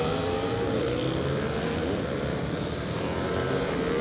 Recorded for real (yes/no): no